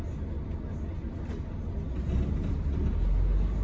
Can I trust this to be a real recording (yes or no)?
yes